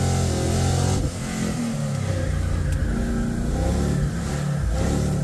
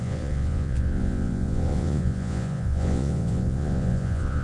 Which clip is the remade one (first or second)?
second